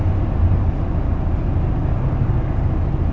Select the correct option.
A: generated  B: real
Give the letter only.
B